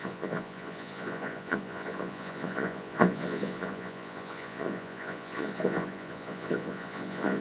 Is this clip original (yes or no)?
no